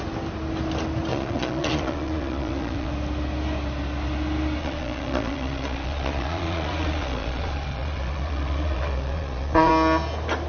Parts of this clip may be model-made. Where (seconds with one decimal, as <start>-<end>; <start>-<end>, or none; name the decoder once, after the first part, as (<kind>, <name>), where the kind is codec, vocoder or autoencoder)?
1.1-2.9 (vocoder, Vocos); 4.6-9.7